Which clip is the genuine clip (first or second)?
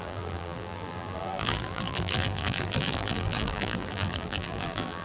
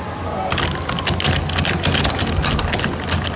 second